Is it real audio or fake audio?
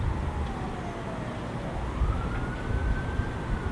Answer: real